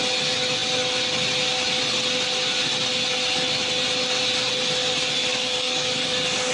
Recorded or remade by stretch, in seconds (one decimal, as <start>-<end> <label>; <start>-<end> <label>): 0.0-5.3 recorded; 5.3-6.5 remade